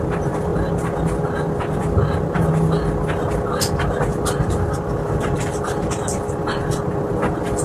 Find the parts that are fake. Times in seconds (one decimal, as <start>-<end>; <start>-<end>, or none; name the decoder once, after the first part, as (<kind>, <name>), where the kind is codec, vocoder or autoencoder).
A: none